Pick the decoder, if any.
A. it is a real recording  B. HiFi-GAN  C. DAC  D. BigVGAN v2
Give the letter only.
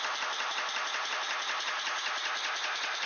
A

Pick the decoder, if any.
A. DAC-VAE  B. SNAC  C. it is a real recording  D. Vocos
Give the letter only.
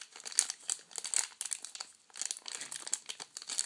C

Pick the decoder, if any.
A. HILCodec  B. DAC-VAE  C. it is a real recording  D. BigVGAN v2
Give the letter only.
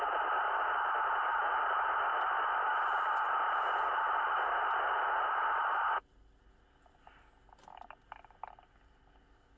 C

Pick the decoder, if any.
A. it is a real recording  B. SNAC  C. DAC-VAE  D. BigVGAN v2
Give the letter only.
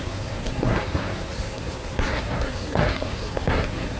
B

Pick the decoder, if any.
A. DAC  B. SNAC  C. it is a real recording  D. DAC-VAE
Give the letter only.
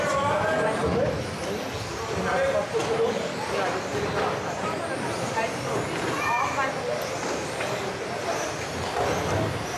C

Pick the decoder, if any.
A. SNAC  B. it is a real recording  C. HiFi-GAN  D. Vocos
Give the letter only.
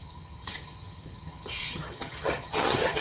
C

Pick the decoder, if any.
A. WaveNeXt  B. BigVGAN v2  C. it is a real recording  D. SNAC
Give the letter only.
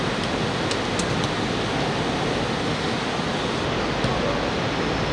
C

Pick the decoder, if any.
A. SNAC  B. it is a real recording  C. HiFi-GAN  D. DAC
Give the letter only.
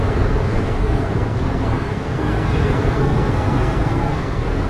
A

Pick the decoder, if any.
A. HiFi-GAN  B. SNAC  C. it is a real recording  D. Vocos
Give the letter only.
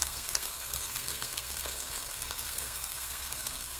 B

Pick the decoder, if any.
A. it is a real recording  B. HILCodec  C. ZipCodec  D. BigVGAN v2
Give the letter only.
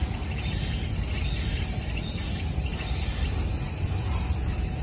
A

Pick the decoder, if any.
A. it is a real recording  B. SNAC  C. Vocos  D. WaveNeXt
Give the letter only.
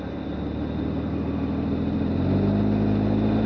A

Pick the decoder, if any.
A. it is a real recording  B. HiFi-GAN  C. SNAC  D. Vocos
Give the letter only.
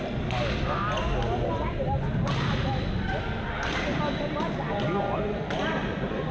A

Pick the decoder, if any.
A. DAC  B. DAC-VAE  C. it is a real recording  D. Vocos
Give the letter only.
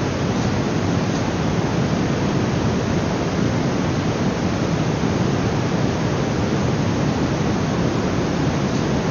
C